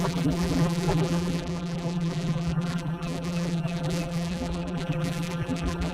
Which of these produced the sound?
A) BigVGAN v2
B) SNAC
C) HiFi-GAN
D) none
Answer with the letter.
A